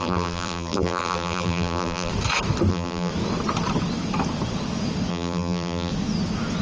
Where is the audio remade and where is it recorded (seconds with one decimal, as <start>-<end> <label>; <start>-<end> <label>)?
0.0-2.1 remade; 2.1-2.7 recorded; 2.7-3.1 remade; 3.1-5.1 recorded; 5.1-5.9 remade; 5.9-6.6 recorded